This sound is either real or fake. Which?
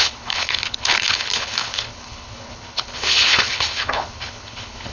fake